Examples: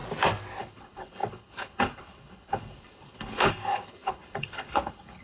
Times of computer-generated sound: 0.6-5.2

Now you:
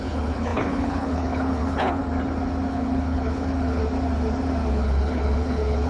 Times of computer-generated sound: 0.0-2.0; 2.7-3.8; 4.7-5.9

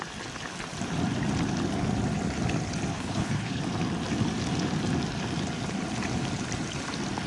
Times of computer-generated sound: 2.9-3.6

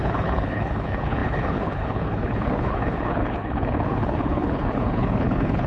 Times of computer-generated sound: 0.0-5.7

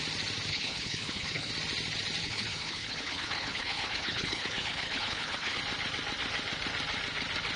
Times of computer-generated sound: 0.5-1.5; 2.2-5.6

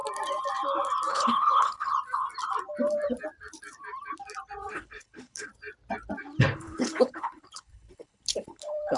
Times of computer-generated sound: 1.1-1.9; 4.7-5.5; 6.4-9.0